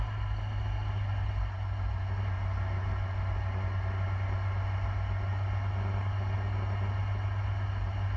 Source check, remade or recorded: recorded